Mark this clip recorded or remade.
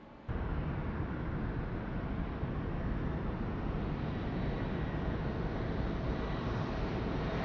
recorded